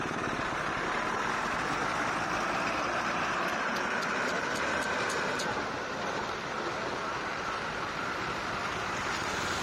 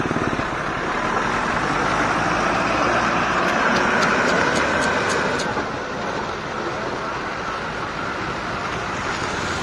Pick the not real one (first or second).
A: first